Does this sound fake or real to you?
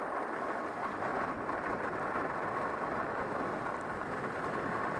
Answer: real